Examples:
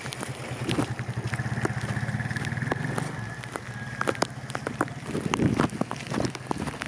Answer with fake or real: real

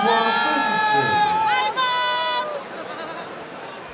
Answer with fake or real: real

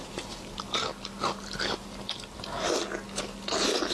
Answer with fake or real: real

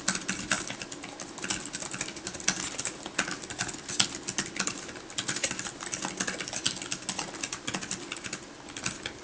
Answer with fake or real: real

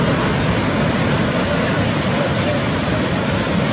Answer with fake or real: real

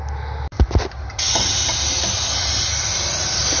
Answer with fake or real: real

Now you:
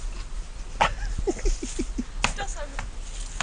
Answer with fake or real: real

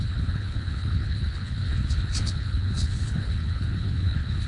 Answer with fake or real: fake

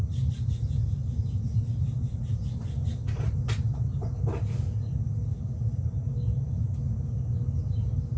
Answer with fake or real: real